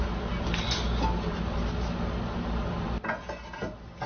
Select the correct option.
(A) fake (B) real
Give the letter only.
B